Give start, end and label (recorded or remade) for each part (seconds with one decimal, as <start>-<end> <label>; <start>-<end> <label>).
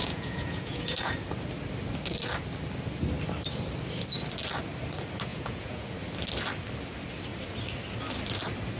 0.0-1.2 remade; 1.2-5.3 recorded; 5.3-5.9 remade; 5.9-8.8 recorded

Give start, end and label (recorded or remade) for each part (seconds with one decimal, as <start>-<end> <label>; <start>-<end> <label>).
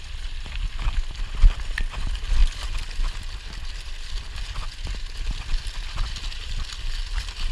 0.0-7.5 recorded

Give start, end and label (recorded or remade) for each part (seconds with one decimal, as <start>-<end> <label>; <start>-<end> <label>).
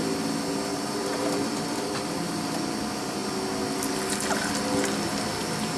0.0-0.7 recorded; 0.7-2.6 remade; 2.6-5.8 recorded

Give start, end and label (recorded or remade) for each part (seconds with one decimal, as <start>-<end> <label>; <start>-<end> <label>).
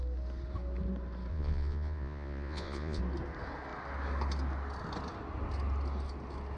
0.0-1.3 recorded; 1.3-3.0 remade; 3.0-6.6 recorded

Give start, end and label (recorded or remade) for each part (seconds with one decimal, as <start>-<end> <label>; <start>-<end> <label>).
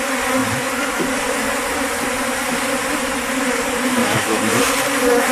0.0-4.0 recorded; 4.0-4.6 remade; 4.6-5.3 recorded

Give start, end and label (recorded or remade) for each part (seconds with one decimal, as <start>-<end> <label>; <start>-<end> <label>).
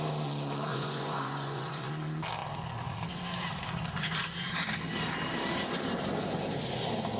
0.0-0.7 recorded; 0.7-1.9 remade; 1.9-7.2 recorded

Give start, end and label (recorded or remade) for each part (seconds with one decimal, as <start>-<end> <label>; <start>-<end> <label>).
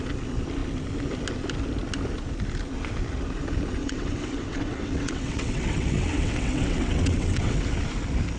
0.0-3.8 recorded; 3.8-7.6 remade; 7.6-8.4 recorded